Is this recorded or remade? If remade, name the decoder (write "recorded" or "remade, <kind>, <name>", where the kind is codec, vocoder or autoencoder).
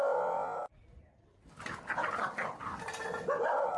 recorded